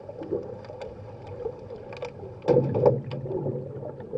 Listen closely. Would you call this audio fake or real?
real